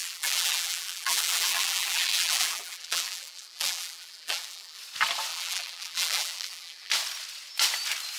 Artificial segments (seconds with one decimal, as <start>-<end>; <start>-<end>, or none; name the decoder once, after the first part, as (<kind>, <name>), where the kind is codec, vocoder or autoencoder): 0.0-4.8 (vocoder, BigVGAN v2); 5.3-6.9